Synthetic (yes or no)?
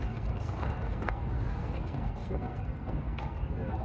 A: yes